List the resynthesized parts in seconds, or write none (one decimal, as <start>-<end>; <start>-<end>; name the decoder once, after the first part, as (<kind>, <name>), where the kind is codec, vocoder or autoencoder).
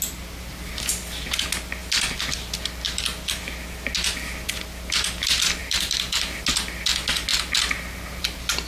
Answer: 1.8-3.0 (vocoder, BigVGAN v2); 5.6-6.4